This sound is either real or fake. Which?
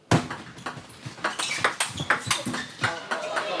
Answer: real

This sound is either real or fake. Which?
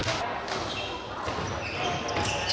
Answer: real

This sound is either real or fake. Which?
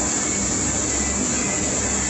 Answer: real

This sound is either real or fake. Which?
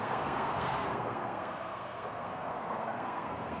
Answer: fake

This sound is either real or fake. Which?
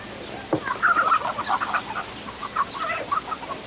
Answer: real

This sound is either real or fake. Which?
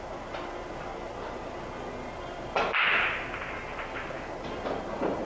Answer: real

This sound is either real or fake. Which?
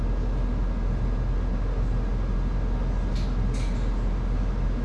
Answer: real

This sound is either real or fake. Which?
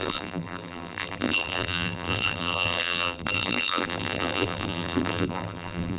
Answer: fake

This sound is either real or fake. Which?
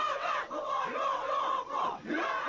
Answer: fake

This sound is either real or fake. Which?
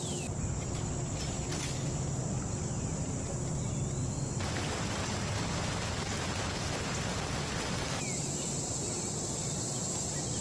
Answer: real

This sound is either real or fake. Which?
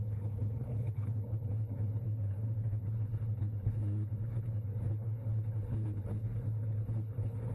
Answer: fake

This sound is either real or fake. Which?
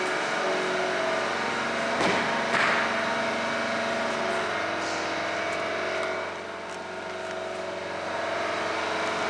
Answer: real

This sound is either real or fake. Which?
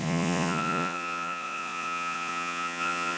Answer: fake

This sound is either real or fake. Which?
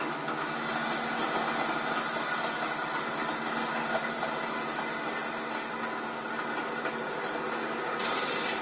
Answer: real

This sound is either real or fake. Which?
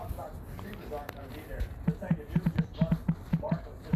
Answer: real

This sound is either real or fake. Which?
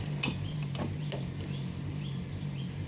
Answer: real